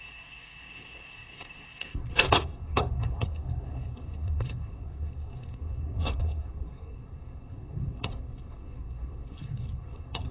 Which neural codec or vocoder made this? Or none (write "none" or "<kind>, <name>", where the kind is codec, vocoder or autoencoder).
codec, SNAC